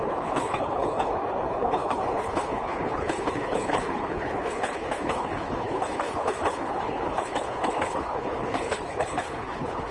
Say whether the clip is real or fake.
fake